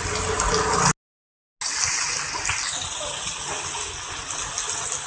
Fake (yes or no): no